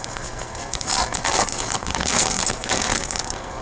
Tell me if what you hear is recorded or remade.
remade